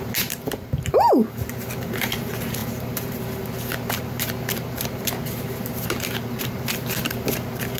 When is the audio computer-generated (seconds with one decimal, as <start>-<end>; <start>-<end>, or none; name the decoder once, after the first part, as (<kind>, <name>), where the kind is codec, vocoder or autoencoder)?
0.0-7.8 (vocoder, BigVGAN v2)